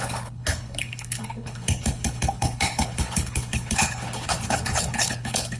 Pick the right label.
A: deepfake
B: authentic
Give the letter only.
A